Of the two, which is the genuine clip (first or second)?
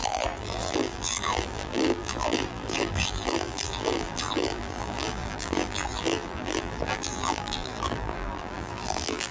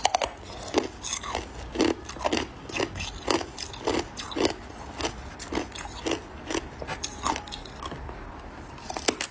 second